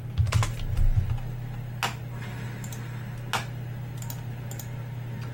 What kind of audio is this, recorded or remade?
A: recorded